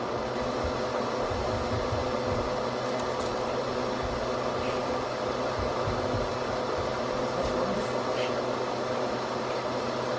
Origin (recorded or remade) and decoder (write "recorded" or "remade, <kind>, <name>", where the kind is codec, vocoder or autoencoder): recorded